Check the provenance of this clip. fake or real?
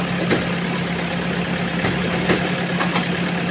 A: real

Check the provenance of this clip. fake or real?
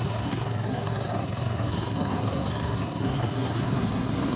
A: fake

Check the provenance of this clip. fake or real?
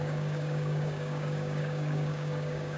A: fake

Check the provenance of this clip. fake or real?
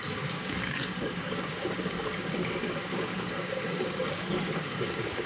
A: fake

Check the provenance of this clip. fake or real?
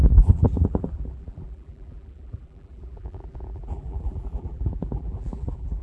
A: fake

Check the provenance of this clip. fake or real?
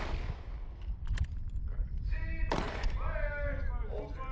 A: real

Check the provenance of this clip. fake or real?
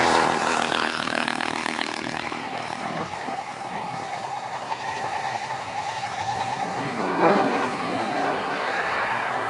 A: fake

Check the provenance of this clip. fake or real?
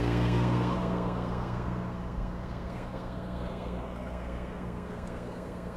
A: fake